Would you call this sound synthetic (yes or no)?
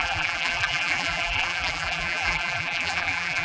yes